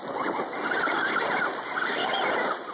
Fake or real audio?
real